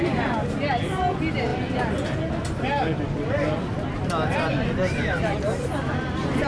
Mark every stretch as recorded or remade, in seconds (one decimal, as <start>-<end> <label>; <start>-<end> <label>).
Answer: 0.0-6.5 recorded